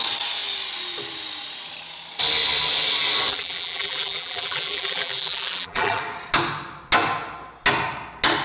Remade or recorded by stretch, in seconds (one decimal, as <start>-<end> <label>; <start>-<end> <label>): 0.0-3.3 recorded; 3.3-6.0 remade; 6.0-8.4 recorded

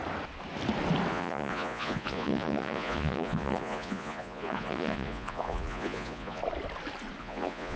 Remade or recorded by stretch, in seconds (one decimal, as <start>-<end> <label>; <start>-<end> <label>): 0.0-1.1 recorded; 1.1-6.4 remade; 6.4-7.2 recorded; 7.2-7.8 remade